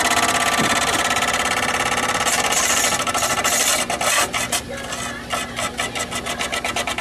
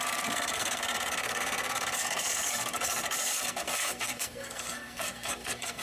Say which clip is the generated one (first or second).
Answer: second